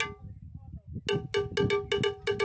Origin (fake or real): real